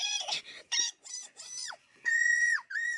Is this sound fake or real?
fake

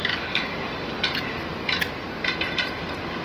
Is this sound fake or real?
real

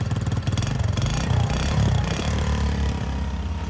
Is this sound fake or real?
real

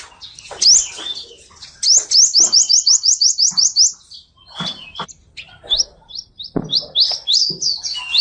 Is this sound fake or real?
real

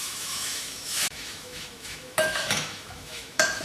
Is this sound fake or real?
fake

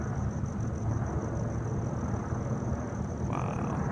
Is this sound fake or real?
real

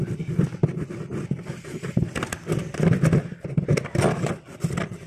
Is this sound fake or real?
real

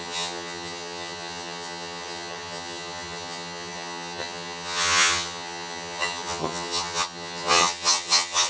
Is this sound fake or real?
fake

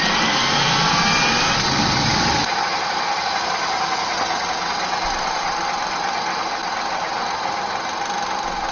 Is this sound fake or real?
real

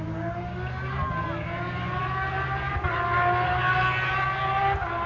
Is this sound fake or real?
real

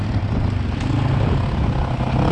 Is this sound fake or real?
real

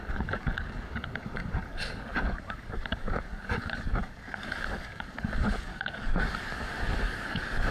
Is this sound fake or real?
fake